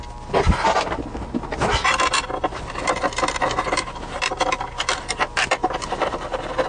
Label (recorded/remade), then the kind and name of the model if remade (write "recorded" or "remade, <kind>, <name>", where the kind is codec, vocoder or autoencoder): recorded